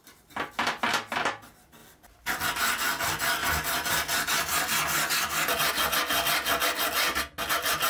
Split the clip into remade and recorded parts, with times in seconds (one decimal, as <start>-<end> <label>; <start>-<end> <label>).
0.0-0.9 remade; 0.9-1.8 recorded; 1.8-2.5 remade; 2.5-7.9 recorded